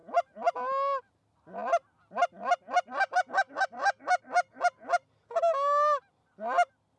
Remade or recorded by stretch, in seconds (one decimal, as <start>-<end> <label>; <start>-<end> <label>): 0.0-7.0 recorded